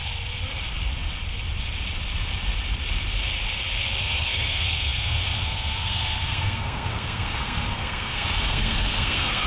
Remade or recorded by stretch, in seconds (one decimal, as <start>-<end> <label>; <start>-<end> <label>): 0.0-4.0 recorded; 4.0-9.5 remade